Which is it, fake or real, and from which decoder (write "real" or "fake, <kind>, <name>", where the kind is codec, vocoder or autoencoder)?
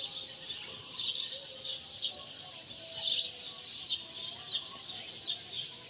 real